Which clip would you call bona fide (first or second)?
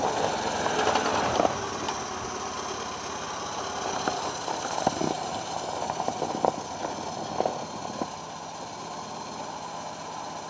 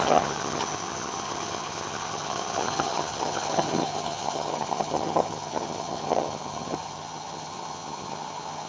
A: first